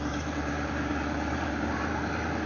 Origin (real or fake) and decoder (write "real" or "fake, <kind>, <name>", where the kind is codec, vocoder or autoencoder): fake, vocoder, BigVGAN v2